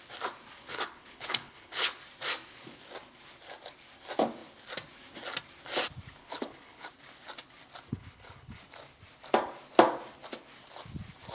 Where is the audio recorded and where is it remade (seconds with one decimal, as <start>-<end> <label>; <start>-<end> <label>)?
0.0-0.7 recorded; 0.7-2.0 remade; 2.0-6.2 recorded; 6.2-6.9 remade; 6.9-7.9 recorded; 7.9-8.6 remade; 8.6-11.3 recorded